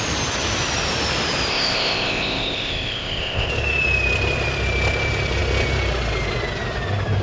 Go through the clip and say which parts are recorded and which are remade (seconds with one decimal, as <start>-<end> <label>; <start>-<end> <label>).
0.0-1.5 recorded; 1.5-3.5 remade; 3.5-7.2 recorded